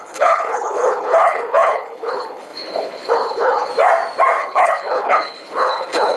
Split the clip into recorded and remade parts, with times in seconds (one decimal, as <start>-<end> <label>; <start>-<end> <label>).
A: 0.0-3.7 remade; 3.7-4.4 recorded; 4.4-6.2 remade